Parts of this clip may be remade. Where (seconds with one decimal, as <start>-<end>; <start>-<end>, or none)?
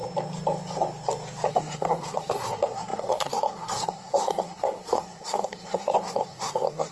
1.5-6.9